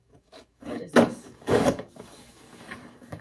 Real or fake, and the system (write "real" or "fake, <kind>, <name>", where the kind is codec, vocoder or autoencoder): fake, codec, DAC